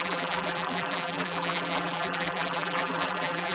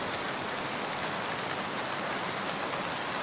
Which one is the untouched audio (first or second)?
second